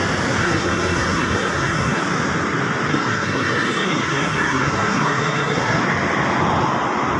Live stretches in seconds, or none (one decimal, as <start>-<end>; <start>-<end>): 0.0-0.4; 2.0-2.9; 5.8-7.2